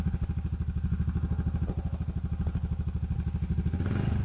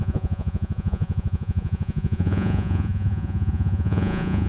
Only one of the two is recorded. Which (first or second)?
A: first